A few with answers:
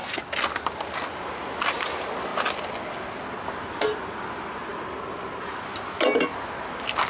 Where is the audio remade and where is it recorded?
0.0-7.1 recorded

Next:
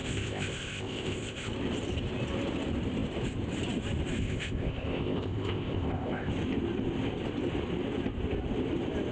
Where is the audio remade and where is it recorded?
0.0-1.5 remade; 1.5-4.2 recorded; 4.2-6.3 remade; 6.3-9.1 recorded

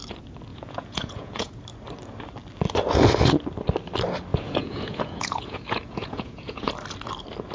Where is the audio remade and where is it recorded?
0.0-0.5 recorded; 0.5-1.6 remade; 1.6-4.3 recorded; 4.3-6.7 remade; 6.7-7.5 recorded